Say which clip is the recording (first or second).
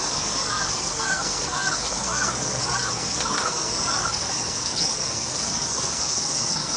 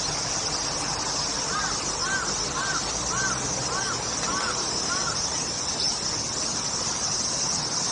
second